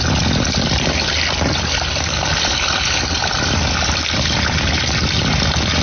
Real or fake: real